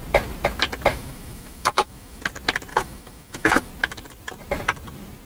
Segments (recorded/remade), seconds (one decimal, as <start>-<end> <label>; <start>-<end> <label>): 0.0-0.9 recorded; 0.9-2.2 remade; 2.2-2.7 recorded; 2.7-3.7 remade; 3.7-5.2 recorded